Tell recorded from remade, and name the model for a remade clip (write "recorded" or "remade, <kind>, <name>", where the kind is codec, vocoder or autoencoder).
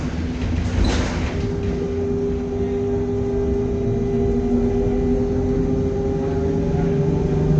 recorded